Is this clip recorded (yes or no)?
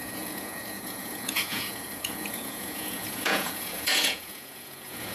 no